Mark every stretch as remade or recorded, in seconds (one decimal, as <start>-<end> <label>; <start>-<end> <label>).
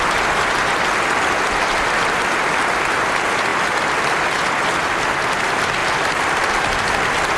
0.0-5.8 recorded; 5.8-6.5 remade; 6.5-7.4 recorded